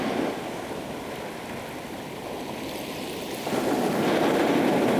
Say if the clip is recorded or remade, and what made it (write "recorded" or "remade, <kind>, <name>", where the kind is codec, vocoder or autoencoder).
recorded